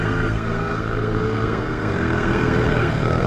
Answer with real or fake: fake